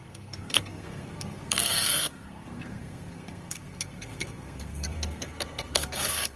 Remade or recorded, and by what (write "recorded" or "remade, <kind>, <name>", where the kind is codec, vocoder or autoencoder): remade, codec, SNAC